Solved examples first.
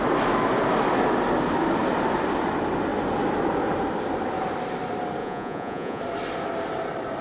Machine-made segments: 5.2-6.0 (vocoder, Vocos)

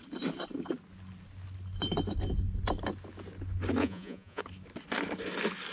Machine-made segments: 3.8-4.4 (vocoder, Vocos)